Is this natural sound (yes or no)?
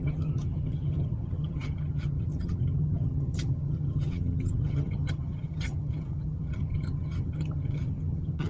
no